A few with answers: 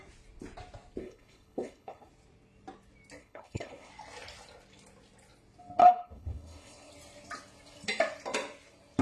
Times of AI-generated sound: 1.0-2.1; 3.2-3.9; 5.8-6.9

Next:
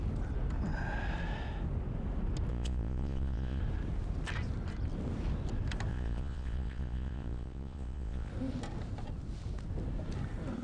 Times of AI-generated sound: 2.5-3.6; 5.9-8.3

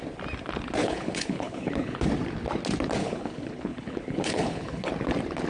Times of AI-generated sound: 0.8-2.1; 3.0-4.9

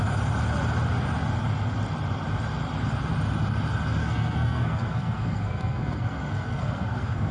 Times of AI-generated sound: 4.0-7.3

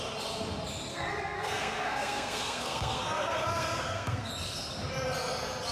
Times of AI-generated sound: 0.9-4.3

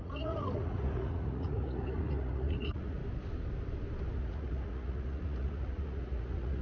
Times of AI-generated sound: 0.0-3.0; 4.2-6.6